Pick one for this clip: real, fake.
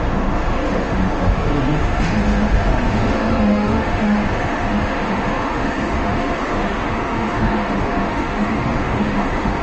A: fake